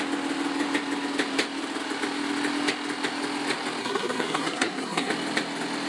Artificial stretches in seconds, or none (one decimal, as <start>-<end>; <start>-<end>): 3.8-5.1